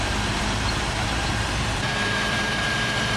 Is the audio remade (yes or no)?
yes